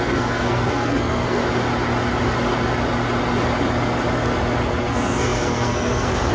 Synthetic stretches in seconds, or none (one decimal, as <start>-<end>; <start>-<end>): 0.0-1.4; 4.8-6.3